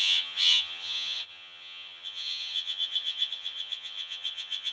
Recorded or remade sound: remade